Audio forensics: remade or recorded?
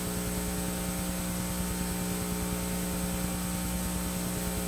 recorded